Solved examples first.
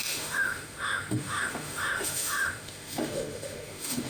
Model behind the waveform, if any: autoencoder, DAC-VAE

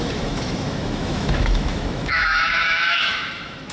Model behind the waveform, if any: autoencoder, DAC-VAE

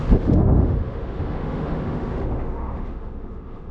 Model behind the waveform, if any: autoencoder, DAC-VAE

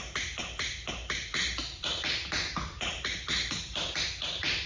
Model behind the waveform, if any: none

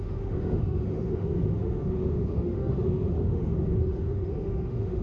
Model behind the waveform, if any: autoencoder, DAC-VAE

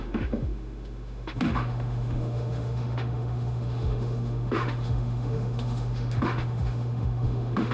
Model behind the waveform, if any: autoencoder, DAC-VAE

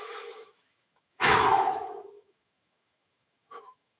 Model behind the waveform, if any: autoencoder, DAC-VAE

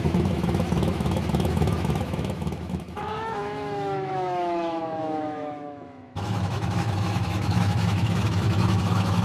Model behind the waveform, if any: autoencoder, DAC-VAE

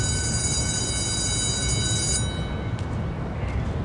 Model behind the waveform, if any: none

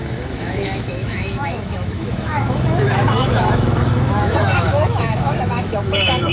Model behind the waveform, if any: autoencoder, DAC-VAE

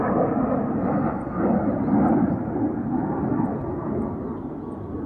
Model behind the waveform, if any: none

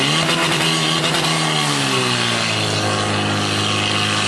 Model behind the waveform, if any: none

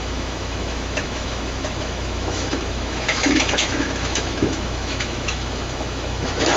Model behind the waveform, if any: autoencoder, DAC-VAE